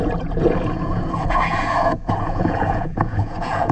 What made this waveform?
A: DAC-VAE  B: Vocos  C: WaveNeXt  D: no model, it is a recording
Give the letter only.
B